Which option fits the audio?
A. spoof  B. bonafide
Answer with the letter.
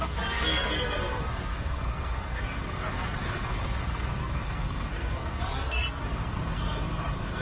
A